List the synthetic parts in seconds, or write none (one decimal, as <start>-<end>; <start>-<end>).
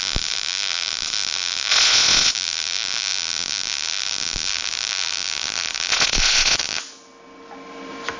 1.7-2.3; 5.9-6.6